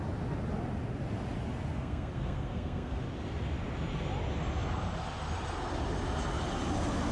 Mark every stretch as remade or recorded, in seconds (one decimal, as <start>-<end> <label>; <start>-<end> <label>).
0.0-1.7 recorded; 1.7-3.0 remade; 3.0-7.1 recorded